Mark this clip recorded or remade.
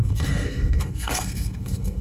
remade